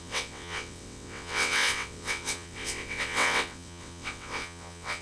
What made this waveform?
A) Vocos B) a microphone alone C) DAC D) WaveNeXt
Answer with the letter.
D